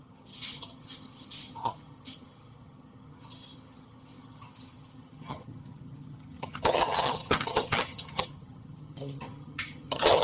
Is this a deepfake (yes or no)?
yes